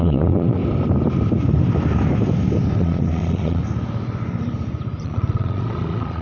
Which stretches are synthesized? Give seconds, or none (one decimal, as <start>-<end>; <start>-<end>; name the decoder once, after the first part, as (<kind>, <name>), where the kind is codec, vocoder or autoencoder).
0.0-0.6 (vocoder, Vocos); 2.8-3.6; 5.0-6.2

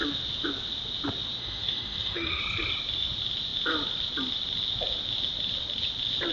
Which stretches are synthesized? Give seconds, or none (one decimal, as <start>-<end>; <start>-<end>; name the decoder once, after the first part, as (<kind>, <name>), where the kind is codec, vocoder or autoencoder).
1.4-2.4 (autoencoder, DAC-VAE)

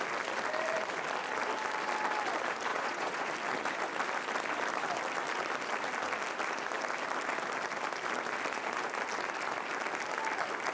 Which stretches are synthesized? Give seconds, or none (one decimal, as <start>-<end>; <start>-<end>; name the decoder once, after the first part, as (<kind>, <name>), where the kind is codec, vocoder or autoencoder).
2.7-3.3 (vocoder, Vocos)

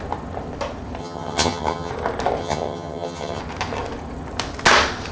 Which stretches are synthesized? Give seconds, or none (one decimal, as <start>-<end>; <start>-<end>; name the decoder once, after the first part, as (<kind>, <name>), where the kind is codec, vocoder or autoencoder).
1.0-1.9 (vocoder, HiFi-GAN); 2.4-3.4

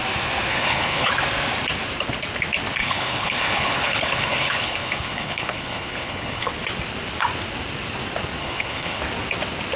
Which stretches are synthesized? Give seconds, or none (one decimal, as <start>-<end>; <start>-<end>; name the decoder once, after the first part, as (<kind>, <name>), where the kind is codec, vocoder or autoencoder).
0.5-1.1 (codec, HILCodec); 2.8-6.5; 8.4-9.0